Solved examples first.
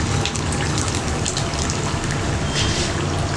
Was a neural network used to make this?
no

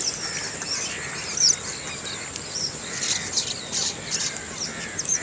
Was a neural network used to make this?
no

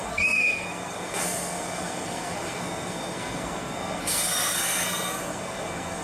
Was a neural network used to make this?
yes